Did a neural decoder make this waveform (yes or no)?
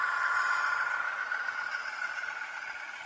yes